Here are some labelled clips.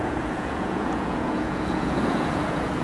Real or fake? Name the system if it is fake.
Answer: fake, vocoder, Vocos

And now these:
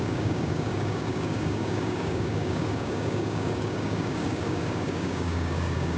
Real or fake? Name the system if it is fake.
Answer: fake, codec, DAC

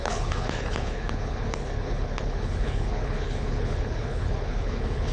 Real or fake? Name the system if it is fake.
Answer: fake, codec, HILCodec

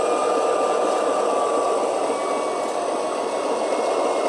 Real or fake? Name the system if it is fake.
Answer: real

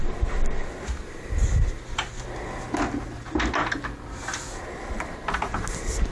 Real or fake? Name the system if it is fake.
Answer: real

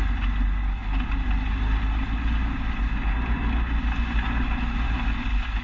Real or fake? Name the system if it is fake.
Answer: real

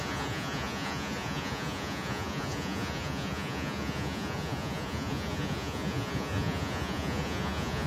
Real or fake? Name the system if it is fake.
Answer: fake, vocoder, Vocos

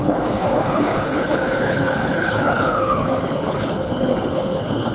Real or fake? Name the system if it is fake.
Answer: fake, codec, HILCodec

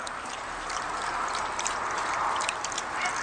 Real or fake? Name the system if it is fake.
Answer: real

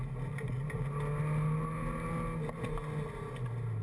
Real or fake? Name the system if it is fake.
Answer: real